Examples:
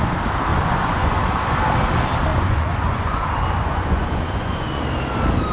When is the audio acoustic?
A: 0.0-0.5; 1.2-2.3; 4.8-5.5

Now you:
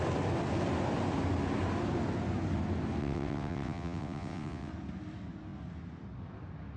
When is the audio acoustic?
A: 0.0-3.0; 4.7-6.8